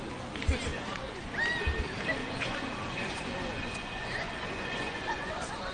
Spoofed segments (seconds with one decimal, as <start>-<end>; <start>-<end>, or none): 0.7-1.3; 2.2-5.7